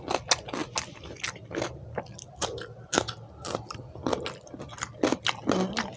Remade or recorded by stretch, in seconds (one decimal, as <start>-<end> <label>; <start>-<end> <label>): 0.0-6.0 recorded